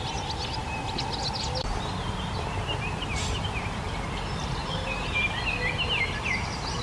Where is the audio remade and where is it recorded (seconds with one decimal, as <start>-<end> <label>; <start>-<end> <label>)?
0.0-4.6 recorded; 4.6-5.3 remade; 5.3-6.8 recorded